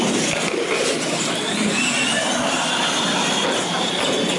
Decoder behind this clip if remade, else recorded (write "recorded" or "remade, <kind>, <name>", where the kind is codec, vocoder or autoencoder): recorded